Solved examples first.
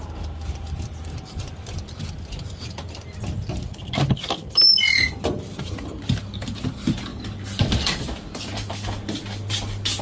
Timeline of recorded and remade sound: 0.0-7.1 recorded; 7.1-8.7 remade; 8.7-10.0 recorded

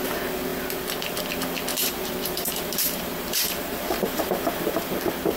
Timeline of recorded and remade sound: 0.0-1.7 recorded; 1.7-4.9 remade; 4.9-5.4 recorded

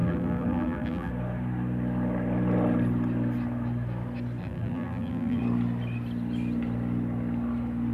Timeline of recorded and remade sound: 0.0-1.1 remade; 1.1-4.4 recorded; 4.4-5.4 remade; 5.4-7.9 recorded

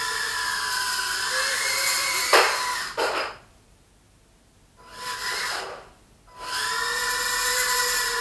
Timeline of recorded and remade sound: 0.0-2.0 recorded; 2.0-3.9 remade; 3.9-4.9 recorded; 4.9-6.6 remade; 6.6-8.2 recorded